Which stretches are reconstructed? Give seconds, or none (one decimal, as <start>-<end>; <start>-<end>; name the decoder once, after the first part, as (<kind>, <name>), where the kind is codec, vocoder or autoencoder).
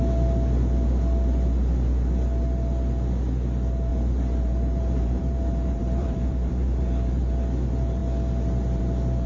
3.9-7.4 (vocoder, BigVGAN v2)